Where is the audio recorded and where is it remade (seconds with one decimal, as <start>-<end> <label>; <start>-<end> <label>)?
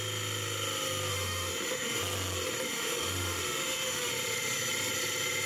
0.0-1.1 recorded; 1.1-2.0 remade; 2.0-2.7 recorded; 2.7-4.1 remade; 4.1-5.5 recorded